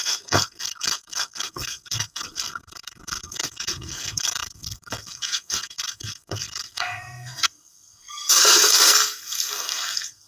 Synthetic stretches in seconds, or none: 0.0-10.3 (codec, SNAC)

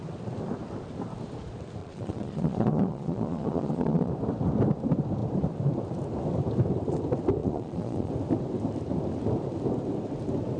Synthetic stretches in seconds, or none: 1.8-4.1 (vocoder, Vocos); 7.4-8.1

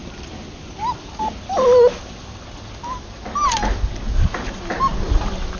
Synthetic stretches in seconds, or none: none